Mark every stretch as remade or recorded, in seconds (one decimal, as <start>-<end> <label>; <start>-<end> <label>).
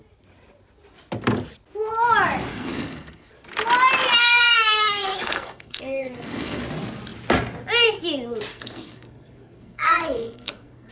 0.0-2.5 recorded; 2.5-3.3 remade; 3.3-4.2 recorded; 4.2-6.6 remade; 6.6-8.5 recorded; 8.5-10.9 remade